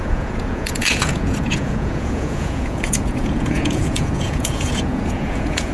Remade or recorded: remade